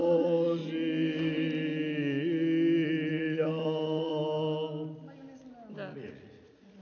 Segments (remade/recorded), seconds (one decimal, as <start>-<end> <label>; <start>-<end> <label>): 0.0-0.6 remade; 0.6-3.1 recorded; 3.1-4.1 remade; 4.1-5.9 recorded; 5.9-6.8 remade

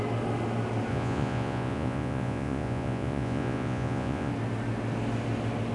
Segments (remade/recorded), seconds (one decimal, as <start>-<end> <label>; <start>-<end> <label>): 0.0-0.9 recorded; 0.9-4.3 remade; 4.3-5.7 recorded